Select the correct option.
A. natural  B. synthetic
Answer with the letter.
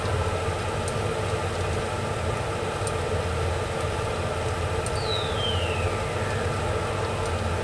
A